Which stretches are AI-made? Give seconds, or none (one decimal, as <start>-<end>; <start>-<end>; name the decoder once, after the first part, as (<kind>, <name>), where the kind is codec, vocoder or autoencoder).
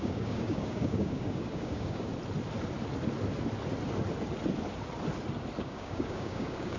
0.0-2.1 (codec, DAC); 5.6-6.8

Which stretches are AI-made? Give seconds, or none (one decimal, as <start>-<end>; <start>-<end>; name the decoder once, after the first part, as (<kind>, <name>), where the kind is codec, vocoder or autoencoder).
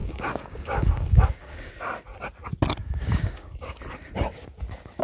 0.0-1.7 (codec, DAC); 2.8-3.8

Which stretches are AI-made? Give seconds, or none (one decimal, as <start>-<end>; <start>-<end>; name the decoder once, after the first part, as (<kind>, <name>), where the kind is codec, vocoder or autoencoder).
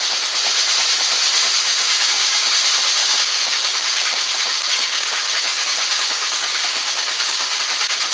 1.7-2.5 (codec, DAC); 3.0-7.6